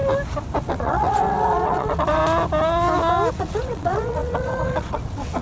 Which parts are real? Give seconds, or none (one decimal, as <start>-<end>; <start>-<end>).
0.0-0.6; 2.2-3.3